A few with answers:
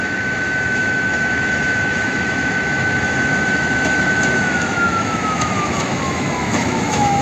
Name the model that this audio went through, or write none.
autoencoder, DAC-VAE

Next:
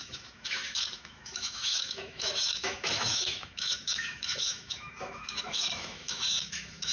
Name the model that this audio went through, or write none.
autoencoder, DAC-VAE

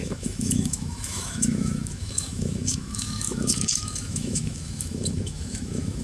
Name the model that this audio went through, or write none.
autoencoder, DAC-VAE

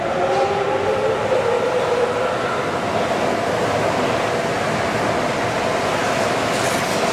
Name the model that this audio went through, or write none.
none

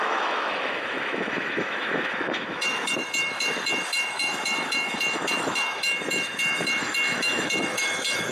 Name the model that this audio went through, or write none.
autoencoder, DAC-VAE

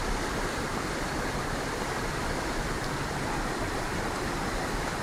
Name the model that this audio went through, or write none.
none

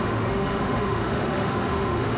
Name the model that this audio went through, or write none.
autoencoder, DAC-VAE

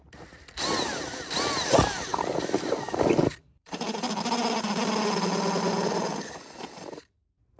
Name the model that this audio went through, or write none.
none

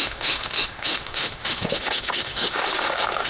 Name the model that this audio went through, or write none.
autoencoder, DAC-VAE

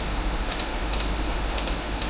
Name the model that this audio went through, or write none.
autoencoder, DAC-VAE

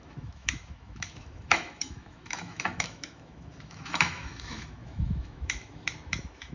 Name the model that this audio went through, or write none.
autoencoder, DAC-VAE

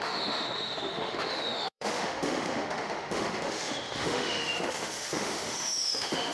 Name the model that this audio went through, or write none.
autoencoder, DAC-VAE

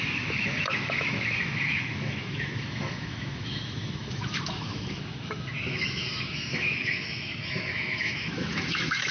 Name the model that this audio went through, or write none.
autoencoder, DAC-VAE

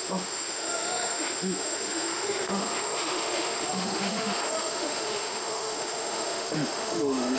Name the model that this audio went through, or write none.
autoencoder, DAC-VAE